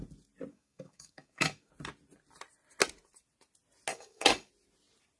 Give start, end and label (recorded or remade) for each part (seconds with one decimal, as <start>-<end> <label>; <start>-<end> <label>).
0.0-0.5 recorded; 0.5-1.7 remade; 1.7-3.9 recorded; 3.9-4.5 remade; 4.5-5.2 recorded